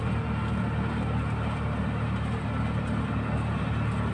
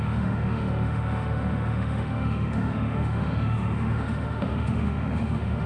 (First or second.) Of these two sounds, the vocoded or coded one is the second